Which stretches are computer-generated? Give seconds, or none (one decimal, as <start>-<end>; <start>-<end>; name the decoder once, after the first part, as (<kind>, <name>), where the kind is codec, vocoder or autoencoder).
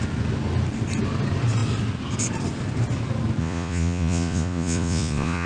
3.4-5.5 (vocoder, Vocos)